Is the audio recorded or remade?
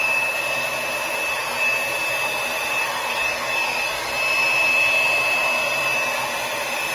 recorded